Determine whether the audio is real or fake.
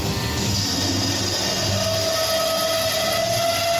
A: real